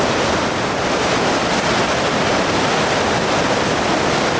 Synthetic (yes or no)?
no